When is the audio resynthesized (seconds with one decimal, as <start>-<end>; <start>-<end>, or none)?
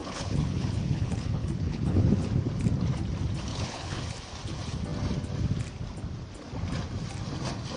0.0-2.1; 3.5-4.0